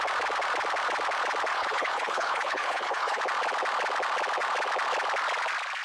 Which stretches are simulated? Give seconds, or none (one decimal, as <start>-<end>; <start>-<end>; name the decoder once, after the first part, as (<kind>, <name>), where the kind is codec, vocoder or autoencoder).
1.5-3.2 (codec, HILCodec)